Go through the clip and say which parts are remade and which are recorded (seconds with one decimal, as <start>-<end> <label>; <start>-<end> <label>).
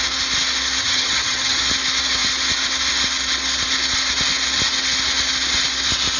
0.0-0.8 recorded; 0.8-1.6 remade; 1.6-6.2 recorded